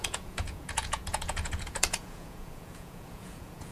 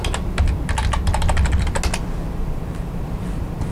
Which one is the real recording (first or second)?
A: second